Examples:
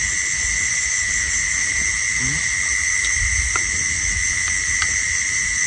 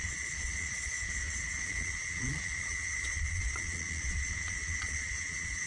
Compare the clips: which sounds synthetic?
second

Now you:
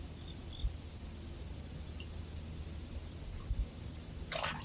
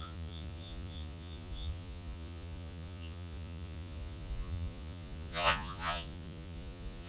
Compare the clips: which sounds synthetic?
second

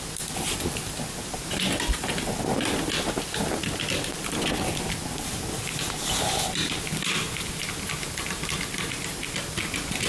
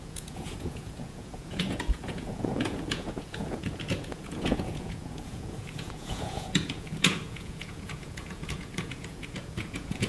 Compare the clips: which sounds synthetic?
second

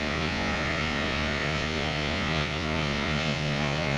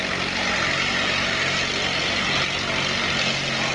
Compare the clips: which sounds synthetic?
first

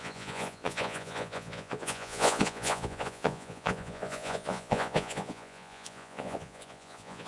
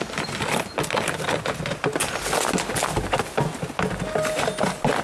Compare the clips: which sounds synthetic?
first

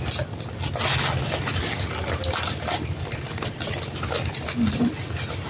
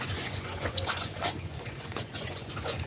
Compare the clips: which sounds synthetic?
second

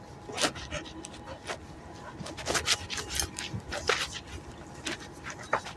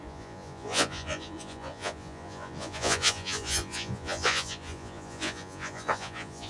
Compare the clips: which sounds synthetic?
second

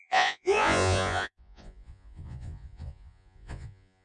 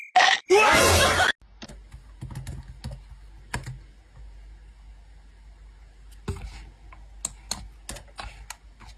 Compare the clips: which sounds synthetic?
first